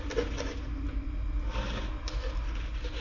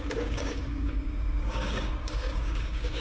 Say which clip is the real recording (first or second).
first